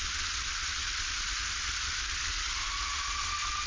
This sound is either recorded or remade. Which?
recorded